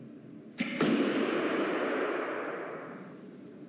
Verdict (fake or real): fake